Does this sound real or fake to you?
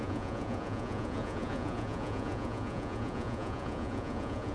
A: fake